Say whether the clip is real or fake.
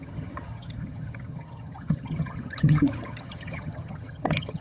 fake